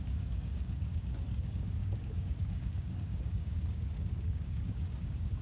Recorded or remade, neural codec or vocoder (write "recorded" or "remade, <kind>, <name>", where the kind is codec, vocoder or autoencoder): remade, codec, DAC